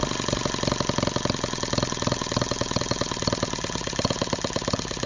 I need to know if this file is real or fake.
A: real